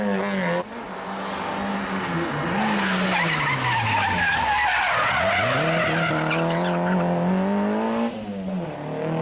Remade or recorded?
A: recorded